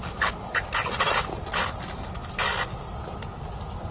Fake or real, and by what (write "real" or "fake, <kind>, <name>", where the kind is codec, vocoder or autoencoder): real